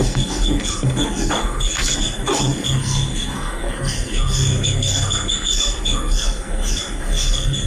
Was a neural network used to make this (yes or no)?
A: yes